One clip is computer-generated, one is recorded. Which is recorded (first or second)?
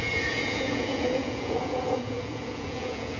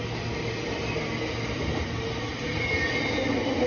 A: second